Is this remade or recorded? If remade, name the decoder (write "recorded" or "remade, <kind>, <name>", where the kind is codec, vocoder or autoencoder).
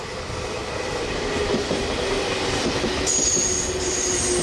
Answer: recorded